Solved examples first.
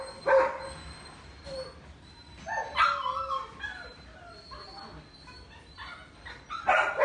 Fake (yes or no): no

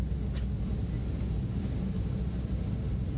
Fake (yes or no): no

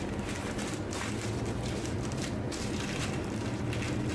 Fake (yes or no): yes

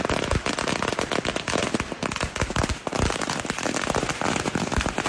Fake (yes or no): no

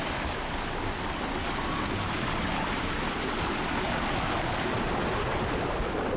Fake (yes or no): no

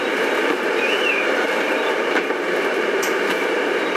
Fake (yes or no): yes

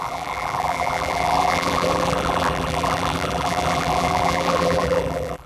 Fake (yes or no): yes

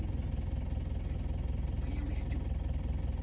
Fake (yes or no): no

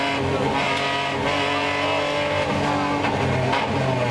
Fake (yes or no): no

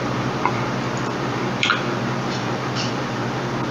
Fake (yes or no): no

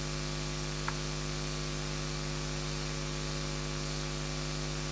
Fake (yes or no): no